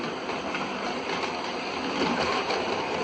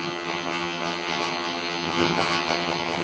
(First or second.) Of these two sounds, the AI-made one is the second